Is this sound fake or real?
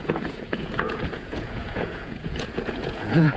fake